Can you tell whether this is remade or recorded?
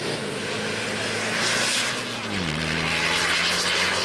recorded